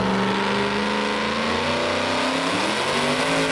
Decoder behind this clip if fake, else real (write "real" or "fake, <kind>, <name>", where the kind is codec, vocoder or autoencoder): real